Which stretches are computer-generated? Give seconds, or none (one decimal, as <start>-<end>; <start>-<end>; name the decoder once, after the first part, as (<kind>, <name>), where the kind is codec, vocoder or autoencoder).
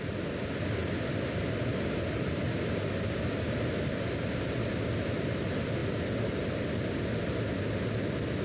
none